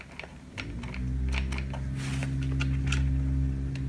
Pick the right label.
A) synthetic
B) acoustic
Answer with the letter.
B